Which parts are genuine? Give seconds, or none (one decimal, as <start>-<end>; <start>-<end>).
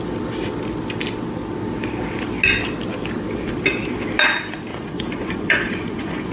0.0-4.7